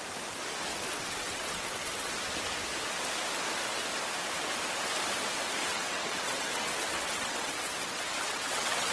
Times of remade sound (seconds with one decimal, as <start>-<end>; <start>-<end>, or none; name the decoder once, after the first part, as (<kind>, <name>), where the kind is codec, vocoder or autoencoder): 0.7-2.1 (vocoder, WaveNeXt); 5.7-8.9